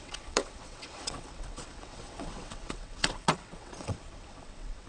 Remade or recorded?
remade